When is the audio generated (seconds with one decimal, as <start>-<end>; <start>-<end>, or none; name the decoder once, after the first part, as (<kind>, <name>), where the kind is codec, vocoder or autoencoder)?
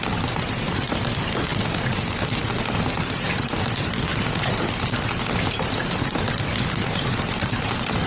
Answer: none